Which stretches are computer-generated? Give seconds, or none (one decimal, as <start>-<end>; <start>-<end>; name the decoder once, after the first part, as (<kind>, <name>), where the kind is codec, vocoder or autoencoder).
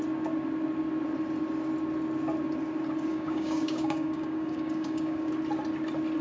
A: 3.1-5.3 (codec, DAC)